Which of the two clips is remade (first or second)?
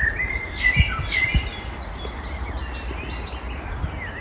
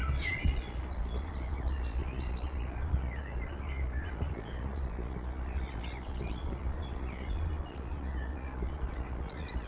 second